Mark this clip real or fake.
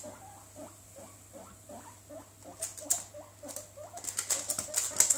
real